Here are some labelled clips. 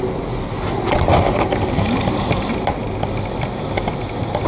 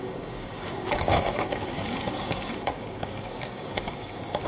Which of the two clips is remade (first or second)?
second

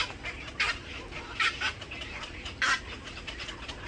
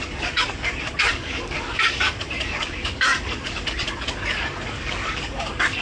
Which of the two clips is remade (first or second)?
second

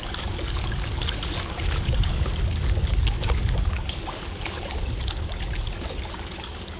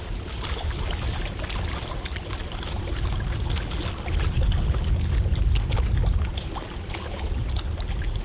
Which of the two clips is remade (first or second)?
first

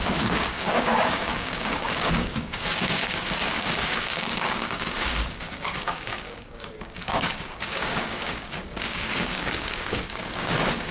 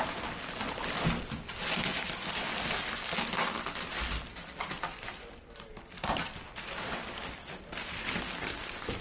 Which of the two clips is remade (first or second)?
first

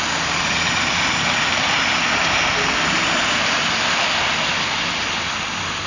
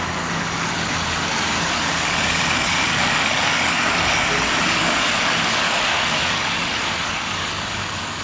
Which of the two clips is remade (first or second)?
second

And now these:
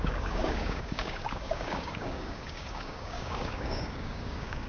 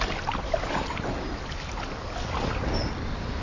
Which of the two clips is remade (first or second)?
first